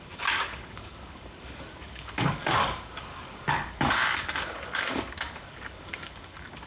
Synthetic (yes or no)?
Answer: yes